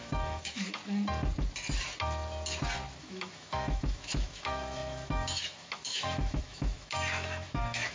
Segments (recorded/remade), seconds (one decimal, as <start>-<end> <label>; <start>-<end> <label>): 0.0-0.8 remade; 0.8-3.0 recorded; 3.0-7.9 remade